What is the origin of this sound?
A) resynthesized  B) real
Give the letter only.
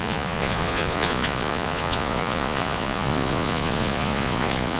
A